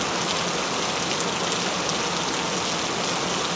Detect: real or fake real